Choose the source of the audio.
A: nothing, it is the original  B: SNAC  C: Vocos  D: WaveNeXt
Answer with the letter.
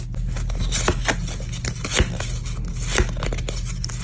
A